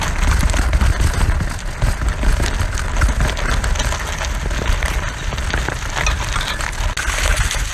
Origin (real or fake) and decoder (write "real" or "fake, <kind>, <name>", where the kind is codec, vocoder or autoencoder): real